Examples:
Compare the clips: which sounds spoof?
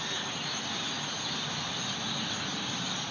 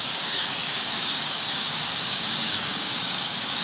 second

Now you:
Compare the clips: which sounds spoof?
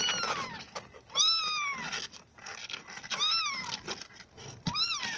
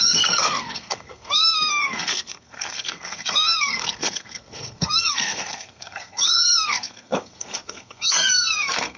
second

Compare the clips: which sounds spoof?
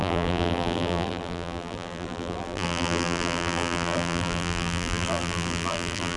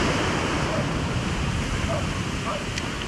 first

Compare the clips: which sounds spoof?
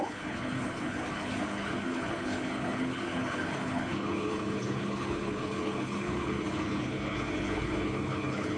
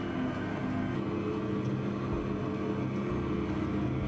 first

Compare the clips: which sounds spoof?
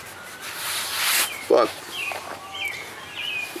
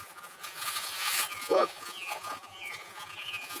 second